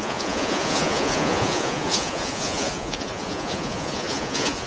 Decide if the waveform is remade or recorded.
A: remade